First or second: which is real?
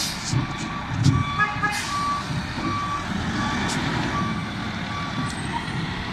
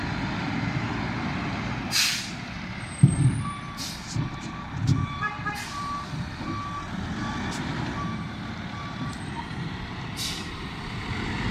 first